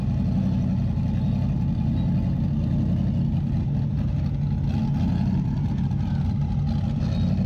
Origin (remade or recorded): recorded